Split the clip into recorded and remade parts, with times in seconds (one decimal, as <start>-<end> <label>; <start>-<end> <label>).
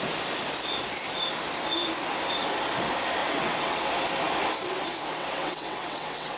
0.0-3.2 recorded; 3.2-3.9 remade; 3.9-5.2 recorded; 5.2-6.4 remade